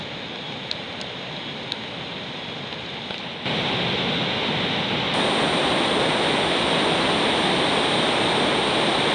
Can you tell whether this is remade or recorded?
recorded